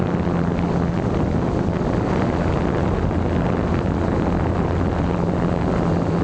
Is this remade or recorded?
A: recorded